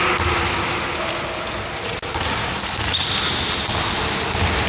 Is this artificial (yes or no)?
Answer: no